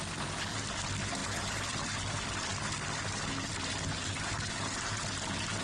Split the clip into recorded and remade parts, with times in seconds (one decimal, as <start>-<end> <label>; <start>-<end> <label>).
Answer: 0.0-1.2 recorded; 1.2-2.3 remade; 2.3-5.6 recorded